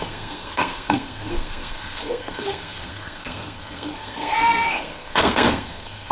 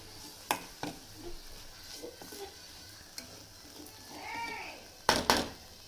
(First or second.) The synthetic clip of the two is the first